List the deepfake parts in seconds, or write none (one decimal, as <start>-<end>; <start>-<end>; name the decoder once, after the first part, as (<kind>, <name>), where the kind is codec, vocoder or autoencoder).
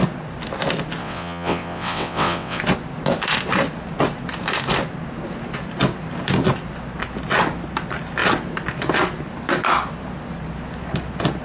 1.0-2.6 (vocoder, WaveNeXt)